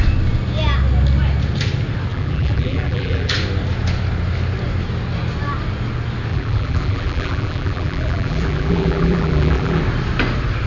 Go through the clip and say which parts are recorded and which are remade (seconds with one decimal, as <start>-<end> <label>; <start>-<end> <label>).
0.0-2.1 recorded; 2.1-3.3 remade; 3.3-6.3 recorded; 6.3-9.8 remade; 9.8-10.7 recorded